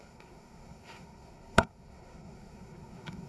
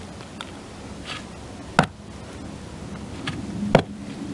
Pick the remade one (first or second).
first